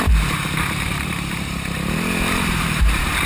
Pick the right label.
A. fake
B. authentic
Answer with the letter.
A